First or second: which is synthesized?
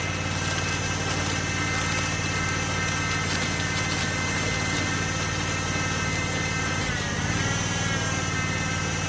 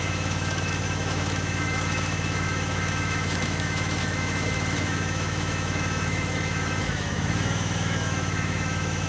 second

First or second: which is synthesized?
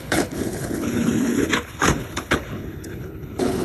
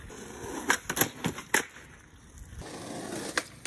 first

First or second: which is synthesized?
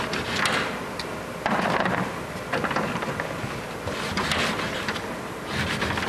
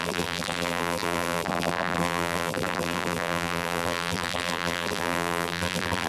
second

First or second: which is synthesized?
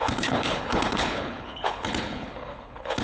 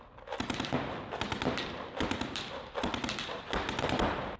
first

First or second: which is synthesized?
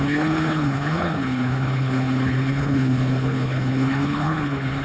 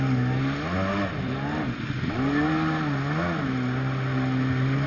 first